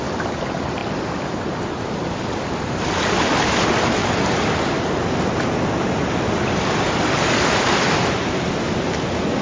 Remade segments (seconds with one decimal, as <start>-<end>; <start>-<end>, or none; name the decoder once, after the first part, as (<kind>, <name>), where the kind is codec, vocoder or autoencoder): none